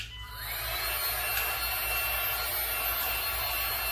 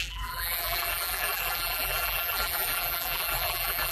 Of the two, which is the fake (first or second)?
second